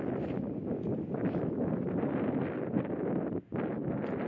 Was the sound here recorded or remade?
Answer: recorded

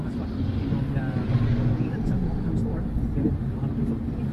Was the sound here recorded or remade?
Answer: recorded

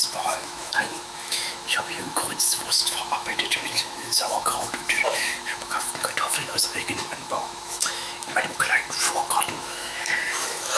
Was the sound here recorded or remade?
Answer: remade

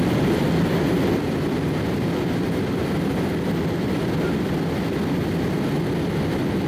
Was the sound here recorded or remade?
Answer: recorded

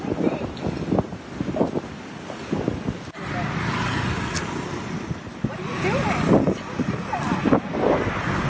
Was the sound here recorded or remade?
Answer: recorded